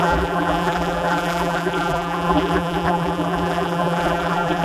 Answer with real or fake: fake